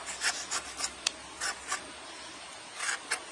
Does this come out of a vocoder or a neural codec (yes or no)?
no